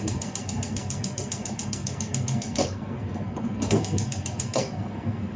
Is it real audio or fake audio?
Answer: fake